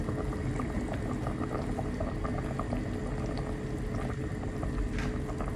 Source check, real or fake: real